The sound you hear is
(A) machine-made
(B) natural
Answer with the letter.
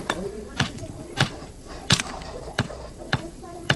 A